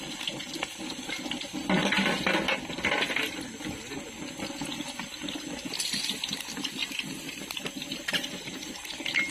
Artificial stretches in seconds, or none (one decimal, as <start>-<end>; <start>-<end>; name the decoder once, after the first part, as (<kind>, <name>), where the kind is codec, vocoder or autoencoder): none